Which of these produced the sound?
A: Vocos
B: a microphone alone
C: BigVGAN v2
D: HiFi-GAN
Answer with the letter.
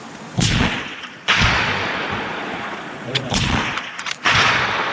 A